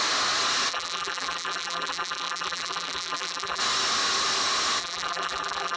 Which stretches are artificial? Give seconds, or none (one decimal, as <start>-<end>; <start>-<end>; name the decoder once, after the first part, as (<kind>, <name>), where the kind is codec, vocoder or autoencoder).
0.7-3.6 (vocoder, BigVGAN v2); 4.8-5.8